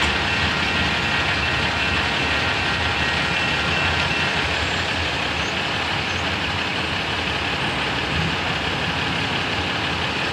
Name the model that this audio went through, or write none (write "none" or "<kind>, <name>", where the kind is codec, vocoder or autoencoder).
none